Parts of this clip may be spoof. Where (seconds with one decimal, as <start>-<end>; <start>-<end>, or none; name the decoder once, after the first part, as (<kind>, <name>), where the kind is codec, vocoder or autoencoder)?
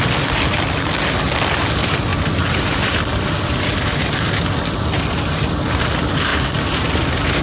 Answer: none